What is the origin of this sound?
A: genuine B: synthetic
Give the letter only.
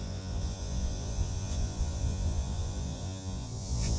B